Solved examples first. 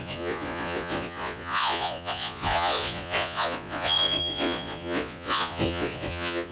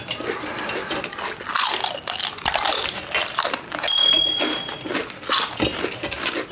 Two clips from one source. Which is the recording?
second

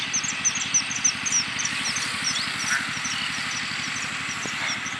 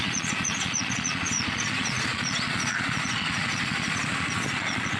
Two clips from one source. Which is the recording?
first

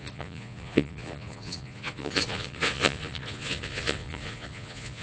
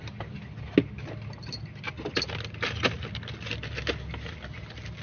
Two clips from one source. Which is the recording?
second